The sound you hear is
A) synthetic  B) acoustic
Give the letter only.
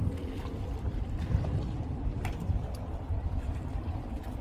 A